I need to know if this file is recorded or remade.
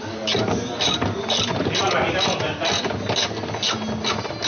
recorded